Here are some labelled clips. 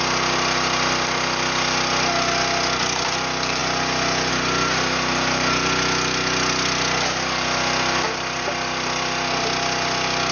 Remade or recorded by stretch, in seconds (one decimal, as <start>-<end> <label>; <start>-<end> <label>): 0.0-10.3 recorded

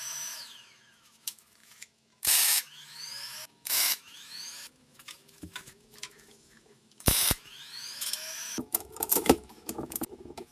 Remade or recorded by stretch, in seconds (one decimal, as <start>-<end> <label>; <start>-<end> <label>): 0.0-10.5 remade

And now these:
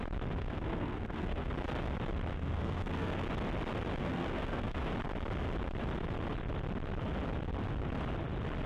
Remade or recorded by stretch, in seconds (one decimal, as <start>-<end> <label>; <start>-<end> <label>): 0.0-0.4 recorded; 0.4-1.5 remade; 1.5-2.3 recorded; 2.3-3.1 remade; 3.1-4.0 recorded; 4.0-4.9 remade; 4.9-8.7 recorded